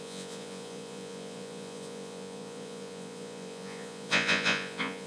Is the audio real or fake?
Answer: fake